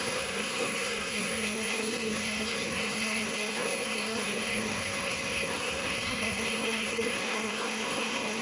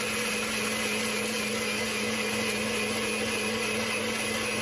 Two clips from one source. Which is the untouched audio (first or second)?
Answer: second